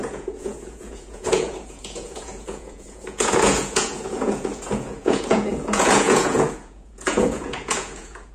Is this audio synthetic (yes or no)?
yes